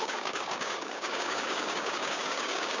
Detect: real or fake fake